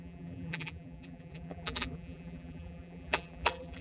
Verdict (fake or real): fake